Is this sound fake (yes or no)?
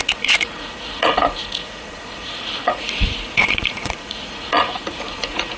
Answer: yes